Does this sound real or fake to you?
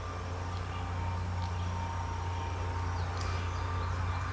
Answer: real